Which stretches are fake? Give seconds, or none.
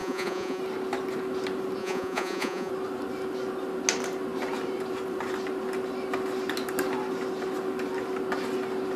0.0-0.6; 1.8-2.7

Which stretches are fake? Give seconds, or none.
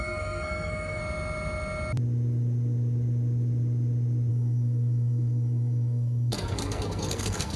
0.0-1.0; 4.3-7.6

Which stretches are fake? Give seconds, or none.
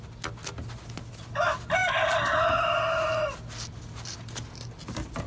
none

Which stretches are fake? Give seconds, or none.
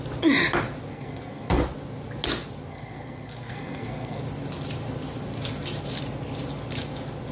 0.9-1.6; 2.7-4.2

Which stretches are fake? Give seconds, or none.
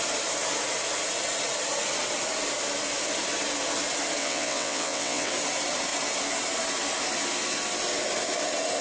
4.2-5.3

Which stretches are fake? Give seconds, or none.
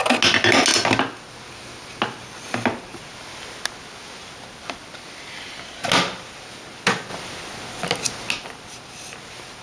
none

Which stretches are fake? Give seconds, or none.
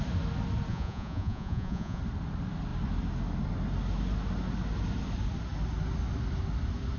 0.7-2.0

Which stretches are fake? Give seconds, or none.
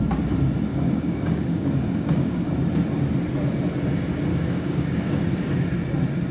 0.7-2.5; 4.3-5.2